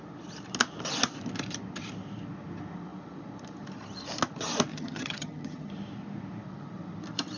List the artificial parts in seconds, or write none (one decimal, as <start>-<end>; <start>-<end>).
4.7-5.7